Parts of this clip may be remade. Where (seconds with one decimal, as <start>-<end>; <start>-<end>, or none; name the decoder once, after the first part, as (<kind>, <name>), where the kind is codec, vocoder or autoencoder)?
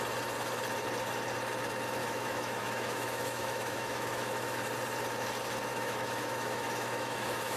2.0-4.7 (autoencoder, DAC-VAE); 5.7-7.6